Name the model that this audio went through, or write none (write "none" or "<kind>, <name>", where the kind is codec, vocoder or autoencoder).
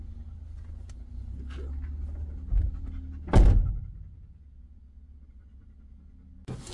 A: none